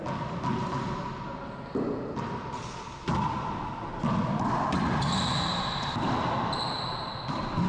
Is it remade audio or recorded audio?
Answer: recorded